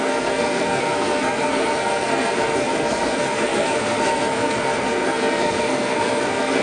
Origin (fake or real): fake